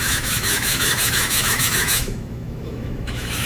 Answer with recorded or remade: remade